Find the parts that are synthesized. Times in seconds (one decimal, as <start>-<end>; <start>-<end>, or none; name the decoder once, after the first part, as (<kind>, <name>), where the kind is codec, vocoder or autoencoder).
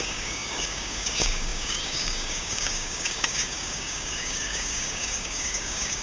0.0-6.0 (codec, DAC)